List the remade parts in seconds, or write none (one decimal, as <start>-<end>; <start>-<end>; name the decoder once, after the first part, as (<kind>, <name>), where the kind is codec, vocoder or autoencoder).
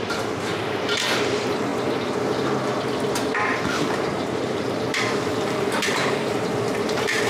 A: 0.0-1.7 (vocoder, BigVGAN v2); 3.1-7.3